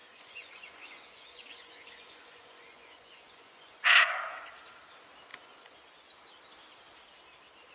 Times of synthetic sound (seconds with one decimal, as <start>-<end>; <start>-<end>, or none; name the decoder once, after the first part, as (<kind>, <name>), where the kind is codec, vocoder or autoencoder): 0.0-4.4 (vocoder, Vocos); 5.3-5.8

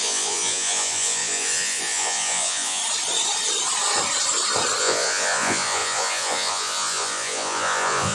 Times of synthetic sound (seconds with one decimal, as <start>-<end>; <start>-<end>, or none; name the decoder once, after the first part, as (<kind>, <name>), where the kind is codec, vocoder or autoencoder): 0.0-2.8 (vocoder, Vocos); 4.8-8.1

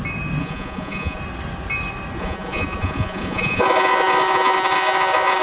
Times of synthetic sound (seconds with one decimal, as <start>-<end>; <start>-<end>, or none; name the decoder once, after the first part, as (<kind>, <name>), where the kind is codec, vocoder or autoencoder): 0.4-1.2 (vocoder, Vocos); 2.2-5.4

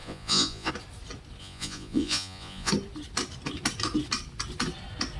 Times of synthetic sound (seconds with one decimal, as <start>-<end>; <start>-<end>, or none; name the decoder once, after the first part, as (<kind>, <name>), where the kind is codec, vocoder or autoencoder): 0.0-0.7 (vocoder, Vocos); 1.4-2.7